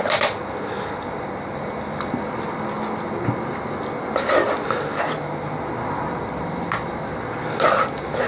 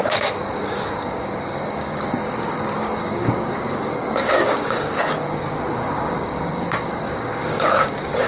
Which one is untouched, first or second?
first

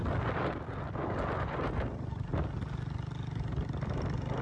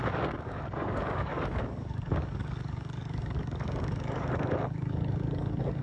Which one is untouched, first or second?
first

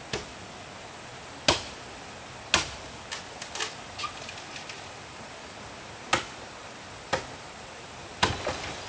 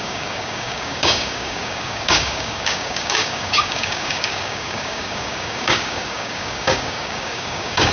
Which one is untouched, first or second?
first